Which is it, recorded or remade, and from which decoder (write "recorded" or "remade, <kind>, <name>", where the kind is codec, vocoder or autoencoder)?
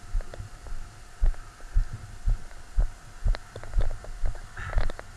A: recorded